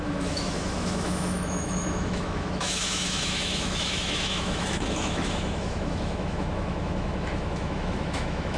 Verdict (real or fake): fake